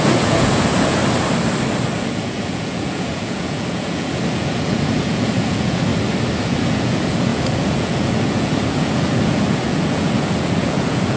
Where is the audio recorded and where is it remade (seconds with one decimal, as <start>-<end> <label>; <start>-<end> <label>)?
0.0-1.0 remade; 1.0-2.0 recorded; 2.0-5.9 remade; 5.9-6.4 recorded; 6.4-11.2 remade